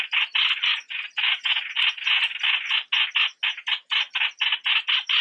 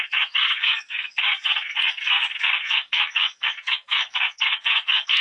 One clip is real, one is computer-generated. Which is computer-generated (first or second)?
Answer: second